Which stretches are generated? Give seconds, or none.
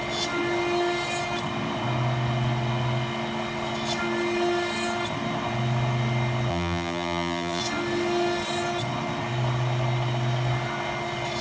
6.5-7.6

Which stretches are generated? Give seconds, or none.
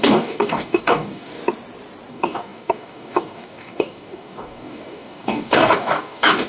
0.0-1.4; 2.1-6.5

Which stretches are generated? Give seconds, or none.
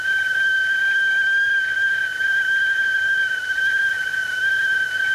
none